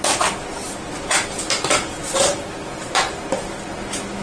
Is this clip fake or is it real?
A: real